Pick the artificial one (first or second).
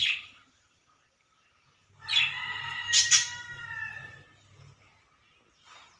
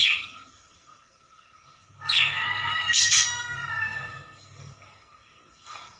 second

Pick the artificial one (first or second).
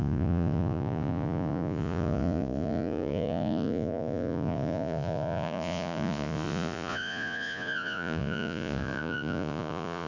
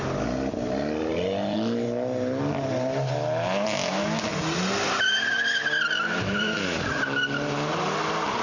first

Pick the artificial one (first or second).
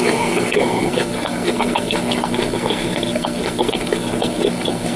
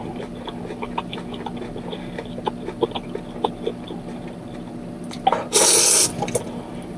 first